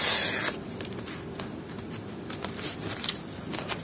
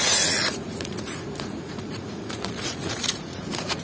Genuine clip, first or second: first